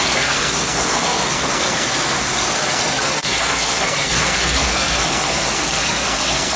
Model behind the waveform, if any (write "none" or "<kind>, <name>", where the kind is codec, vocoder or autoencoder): codec, SNAC